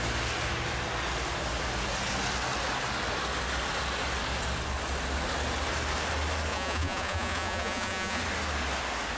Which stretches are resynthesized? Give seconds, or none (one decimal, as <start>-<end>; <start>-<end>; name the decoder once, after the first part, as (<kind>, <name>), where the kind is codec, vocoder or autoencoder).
6.5-8.2 (vocoder, Vocos)